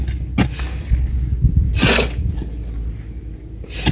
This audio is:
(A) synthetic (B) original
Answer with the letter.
B